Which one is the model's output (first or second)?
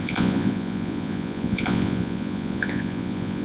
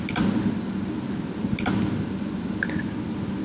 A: first